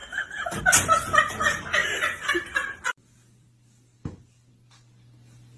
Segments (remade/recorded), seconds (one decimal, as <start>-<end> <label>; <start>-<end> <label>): 0.0-0.6 remade; 0.6-5.6 recorded